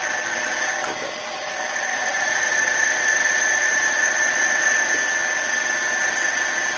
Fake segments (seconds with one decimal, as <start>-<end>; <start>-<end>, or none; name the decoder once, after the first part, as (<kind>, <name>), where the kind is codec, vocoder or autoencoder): 1.9-4.9 (vocoder, Vocos)